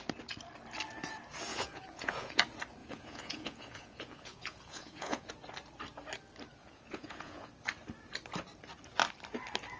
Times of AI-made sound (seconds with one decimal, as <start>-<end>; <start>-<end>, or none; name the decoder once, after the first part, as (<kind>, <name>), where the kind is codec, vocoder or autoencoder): 1.5-2.4 (vocoder, Vocos); 2.8-5.3; 6.6-7.5